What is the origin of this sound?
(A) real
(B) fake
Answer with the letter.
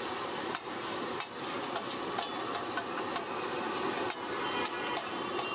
A